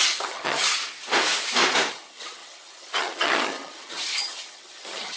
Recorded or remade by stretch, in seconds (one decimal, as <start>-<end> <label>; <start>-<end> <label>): 0.0-0.8 remade; 0.8-1.9 recorded; 1.9-5.2 remade